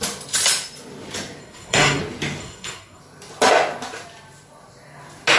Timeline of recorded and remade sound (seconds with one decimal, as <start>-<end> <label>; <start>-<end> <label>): 0.0-1.4 recorded; 1.4-2.0 remade; 2.0-2.4 recorded; 2.4-3.0 remade; 3.0-5.4 recorded